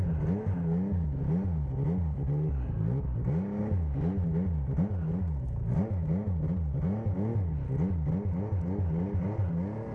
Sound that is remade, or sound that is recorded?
recorded